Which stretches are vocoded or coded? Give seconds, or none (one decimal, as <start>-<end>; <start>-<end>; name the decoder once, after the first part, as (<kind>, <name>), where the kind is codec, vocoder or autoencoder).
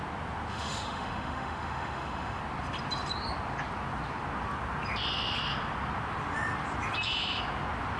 0.5-2.4 (autoencoder, DAC-VAE)